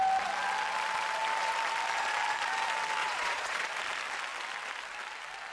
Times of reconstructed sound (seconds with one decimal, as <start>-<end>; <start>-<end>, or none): 3.0-3.7

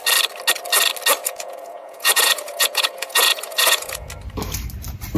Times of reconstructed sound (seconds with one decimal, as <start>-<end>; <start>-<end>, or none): 1.2-4.1

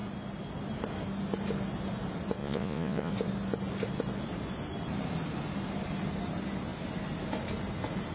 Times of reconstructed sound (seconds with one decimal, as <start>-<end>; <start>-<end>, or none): 2.4-3.1

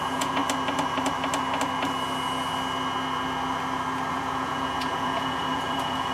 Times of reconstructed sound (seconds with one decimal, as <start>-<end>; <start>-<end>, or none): 0.0-0.4; 4.1-6.1